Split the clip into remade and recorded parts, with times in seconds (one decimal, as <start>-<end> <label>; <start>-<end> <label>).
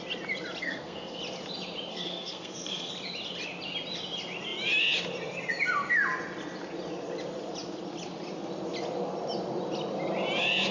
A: 0.0-0.6 recorded; 0.6-1.2 remade; 1.2-1.9 recorded; 1.9-2.9 remade; 2.9-10.7 recorded